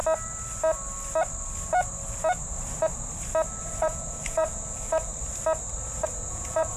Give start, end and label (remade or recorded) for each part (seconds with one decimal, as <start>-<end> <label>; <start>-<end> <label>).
0.0-3.6 recorded; 3.6-5.1 remade; 5.1-6.1 recorded; 6.1-6.8 remade